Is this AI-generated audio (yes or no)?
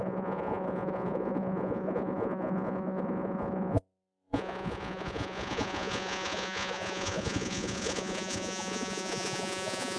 yes